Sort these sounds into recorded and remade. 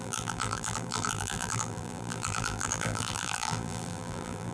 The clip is remade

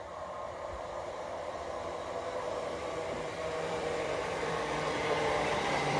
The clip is remade